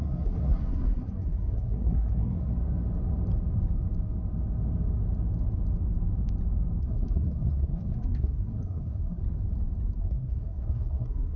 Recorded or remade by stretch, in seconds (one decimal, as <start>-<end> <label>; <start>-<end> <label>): 0.0-2.5 remade; 2.5-6.8 recorded; 6.8-9.2 remade; 9.2-10.0 recorded; 10.0-11.4 remade